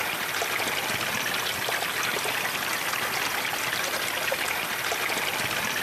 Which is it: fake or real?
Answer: real